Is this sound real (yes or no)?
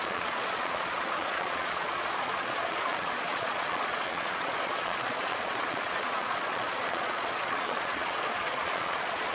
no